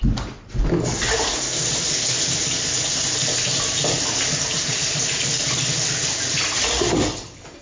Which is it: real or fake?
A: real